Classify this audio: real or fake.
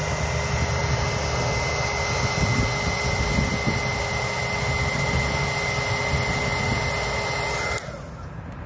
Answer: real